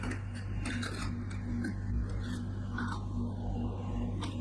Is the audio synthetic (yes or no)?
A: no